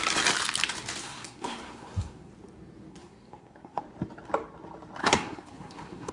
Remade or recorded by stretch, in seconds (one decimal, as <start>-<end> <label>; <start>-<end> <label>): 0.0-1.0 recorded; 1.0-2.3 remade; 2.3-2.9 recorded; 2.9-3.8 remade; 3.8-5.0 recorded; 5.0-6.1 remade